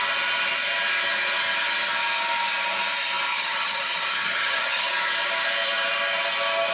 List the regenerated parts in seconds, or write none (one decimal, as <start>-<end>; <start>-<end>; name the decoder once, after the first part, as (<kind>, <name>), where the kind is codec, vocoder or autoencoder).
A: 3.3-4.9 (vocoder, HiFi-GAN)